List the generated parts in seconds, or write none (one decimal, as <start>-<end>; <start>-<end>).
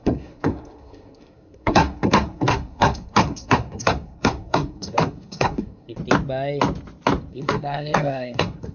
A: 0.0-6.0; 7.3-8.7